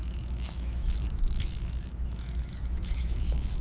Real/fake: fake